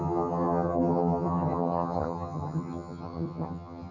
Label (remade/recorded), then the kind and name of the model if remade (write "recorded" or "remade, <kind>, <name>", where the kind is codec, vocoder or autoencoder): remade, vocoder, HiFi-GAN